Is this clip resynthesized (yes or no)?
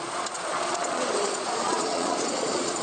yes